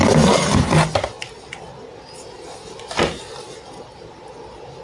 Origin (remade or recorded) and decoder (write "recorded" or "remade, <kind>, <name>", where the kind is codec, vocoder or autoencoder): recorded